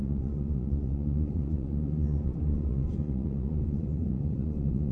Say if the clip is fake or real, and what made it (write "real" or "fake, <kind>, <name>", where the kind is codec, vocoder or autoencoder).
fake, vocoder, Vocos